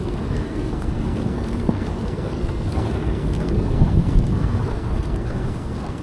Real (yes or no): no